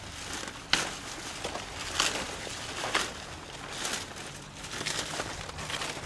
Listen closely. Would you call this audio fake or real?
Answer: real